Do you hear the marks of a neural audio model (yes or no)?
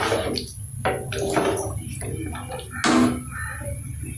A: no